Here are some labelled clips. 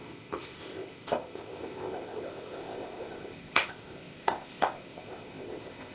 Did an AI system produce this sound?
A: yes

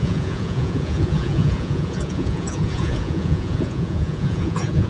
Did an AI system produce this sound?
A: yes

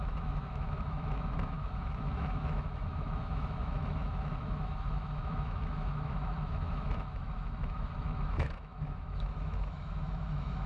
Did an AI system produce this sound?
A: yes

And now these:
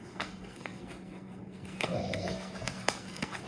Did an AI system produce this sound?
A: yes